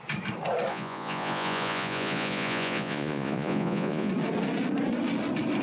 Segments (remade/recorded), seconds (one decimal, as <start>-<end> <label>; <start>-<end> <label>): 0.0-0.7 recorded; 0.7-4.1 remade; 4.1-5.6 recorded

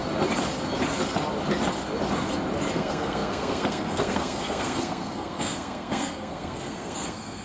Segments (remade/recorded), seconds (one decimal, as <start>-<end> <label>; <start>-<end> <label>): 0.0-2.7 recorded; 2.7-7.4 remade

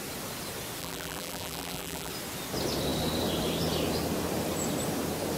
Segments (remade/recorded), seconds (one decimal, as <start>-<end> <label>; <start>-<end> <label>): 0.0-0.8 recorded; 0.8-2.1 remade; 2.1-5.4 recorded

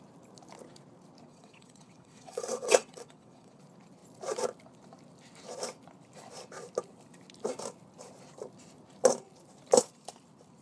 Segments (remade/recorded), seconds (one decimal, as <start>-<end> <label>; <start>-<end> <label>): 0.0-1.3 recorded; 1.3-3.6 remade; 3.6-10.6 recorded

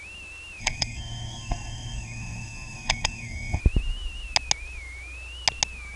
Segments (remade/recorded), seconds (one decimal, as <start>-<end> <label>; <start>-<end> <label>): 0.0-0.6 recorded; 0.6-3.6 remade; 3.6-6.0 recorded

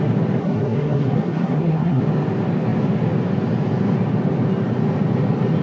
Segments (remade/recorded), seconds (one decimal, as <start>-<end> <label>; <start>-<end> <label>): 0.0-0.4 recorded; 0.4-2.0 remade; 2.0-5.6 recorded

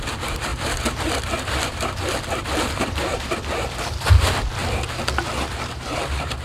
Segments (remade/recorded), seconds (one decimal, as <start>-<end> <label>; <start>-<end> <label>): 0.0-4.6 remade; 4.6-5.5 recorded; 5.5-6.4 remade

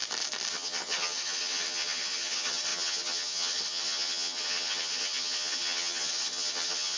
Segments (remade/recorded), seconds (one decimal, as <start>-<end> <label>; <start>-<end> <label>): 0.0-0.5 recorded; 0.5-7.0 remade